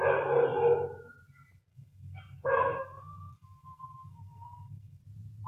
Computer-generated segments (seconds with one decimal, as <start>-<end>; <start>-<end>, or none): 1.7-5.0